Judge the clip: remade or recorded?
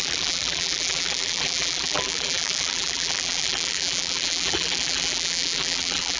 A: remade